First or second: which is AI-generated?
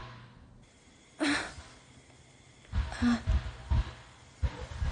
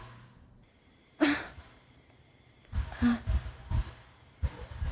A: second